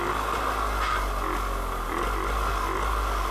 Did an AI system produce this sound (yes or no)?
no